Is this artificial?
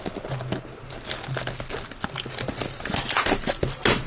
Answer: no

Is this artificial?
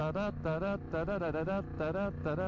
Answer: no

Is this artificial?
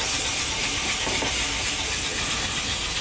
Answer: no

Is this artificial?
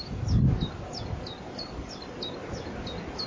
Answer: no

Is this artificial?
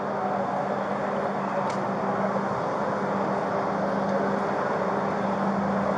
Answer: no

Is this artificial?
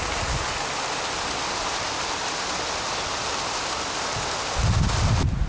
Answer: no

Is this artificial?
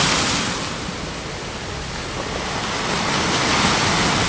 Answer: no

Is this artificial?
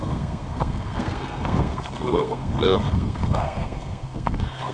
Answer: yes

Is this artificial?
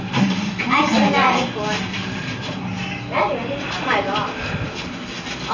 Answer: no